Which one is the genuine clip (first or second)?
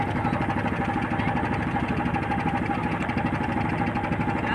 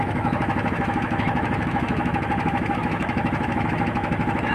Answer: first